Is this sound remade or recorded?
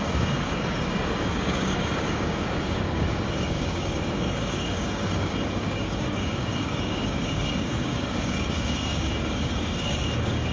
remade